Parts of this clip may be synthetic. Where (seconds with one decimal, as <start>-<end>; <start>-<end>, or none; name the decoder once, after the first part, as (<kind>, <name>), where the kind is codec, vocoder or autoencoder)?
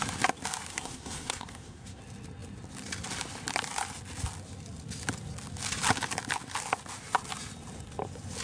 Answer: 0.7-2.0 (codec, SNAC)